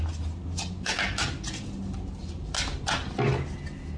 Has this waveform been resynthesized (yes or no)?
no